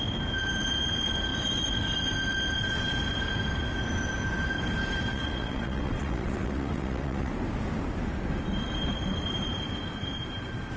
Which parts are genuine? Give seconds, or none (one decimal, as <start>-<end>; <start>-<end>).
0.0-5.1; 7.3-10.8